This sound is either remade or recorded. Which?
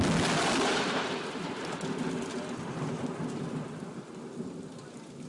recorded